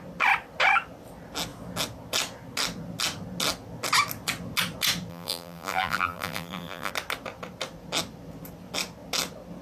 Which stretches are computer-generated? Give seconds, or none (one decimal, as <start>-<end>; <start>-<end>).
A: 5.1-6.9